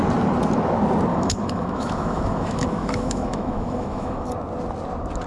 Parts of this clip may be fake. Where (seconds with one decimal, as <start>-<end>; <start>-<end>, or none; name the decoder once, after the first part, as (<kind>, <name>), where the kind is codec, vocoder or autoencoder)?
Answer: 1.1-4.3 (autoencoder, DAC-VAE)